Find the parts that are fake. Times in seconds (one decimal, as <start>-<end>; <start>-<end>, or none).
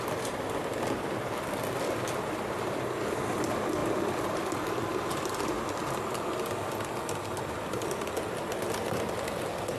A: none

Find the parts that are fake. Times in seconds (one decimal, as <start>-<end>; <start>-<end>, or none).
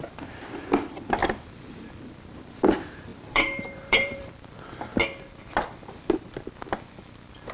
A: 1.2-1.9; 3.1-4.3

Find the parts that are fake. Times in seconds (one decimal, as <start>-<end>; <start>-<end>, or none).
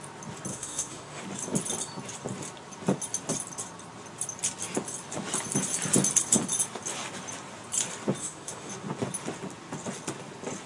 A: 0.5-1.2; 8.2-8.7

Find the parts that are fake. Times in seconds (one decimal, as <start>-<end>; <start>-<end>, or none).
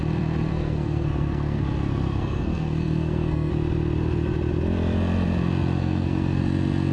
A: 0.5-3.5; 5.8-6.4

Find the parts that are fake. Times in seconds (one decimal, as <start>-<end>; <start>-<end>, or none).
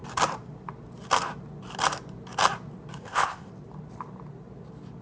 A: 3.0-3.5